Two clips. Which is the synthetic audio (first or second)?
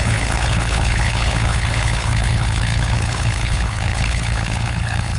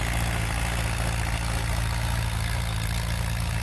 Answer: first